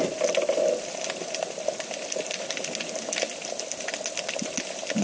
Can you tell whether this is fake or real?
real